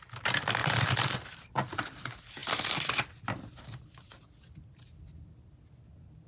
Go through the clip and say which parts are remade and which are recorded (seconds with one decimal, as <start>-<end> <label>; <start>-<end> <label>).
0.0-0.6 recorded; 0.6-2.0 remade; 2.0-2.4 recorded; 2.4-5.5 remade; 5.5-6.3 recorded